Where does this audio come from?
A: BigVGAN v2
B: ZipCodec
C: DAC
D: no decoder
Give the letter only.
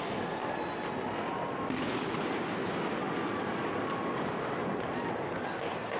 D